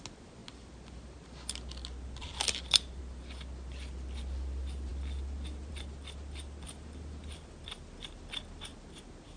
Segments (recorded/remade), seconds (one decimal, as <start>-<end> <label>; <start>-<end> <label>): 0.0-9.4 recorded